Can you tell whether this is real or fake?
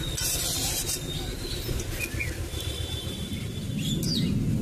real